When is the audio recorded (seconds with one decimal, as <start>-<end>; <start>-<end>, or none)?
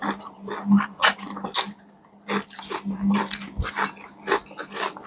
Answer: 0.0-5.1